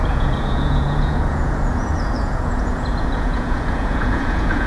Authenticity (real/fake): fake